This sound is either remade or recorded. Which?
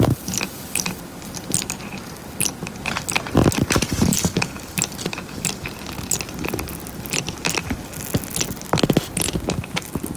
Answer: recorded